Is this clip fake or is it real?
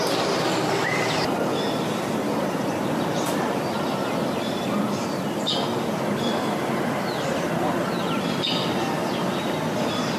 fake